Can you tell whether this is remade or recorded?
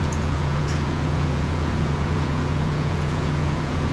remade